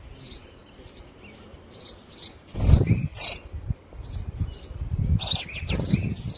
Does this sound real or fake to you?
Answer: real